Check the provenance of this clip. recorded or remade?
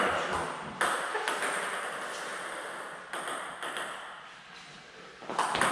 recorded